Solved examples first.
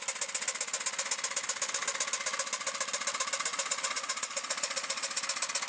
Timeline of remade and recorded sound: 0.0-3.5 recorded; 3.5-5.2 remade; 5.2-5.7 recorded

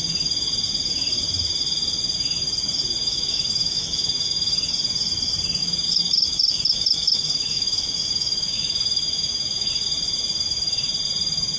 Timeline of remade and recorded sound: 0.0-3.0 recorded; 3.0-4.6 remade; 4.6-5.6 recorded; 5.6-9.7 remade; 9.7-11.6 recorded

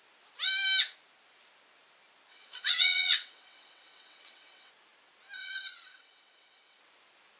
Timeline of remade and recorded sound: 0.0-2.3 recorded; 2.3-4.7 remade; 4.7-5.4 recorded; 5.4-6.8 remade; 6.8-7.4 recorded

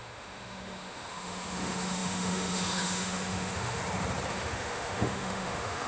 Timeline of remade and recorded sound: 0.0-3.8 remade; 3.8-4.3 recorded; 4.3-5.9 remade

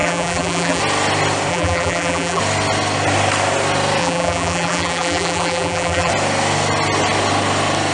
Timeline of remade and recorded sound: 0.0-0.8 remade; 0.8-1.5 recorded; 1.5-2.4 remade; 2.4-4.0 recorded; 4.0-6.1 remade; 6.1-7.9 recorded